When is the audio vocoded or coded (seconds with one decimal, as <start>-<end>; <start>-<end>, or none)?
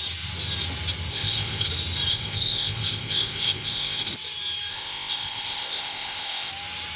1.1-1.7; 2.1-4.1; 4.7-6.5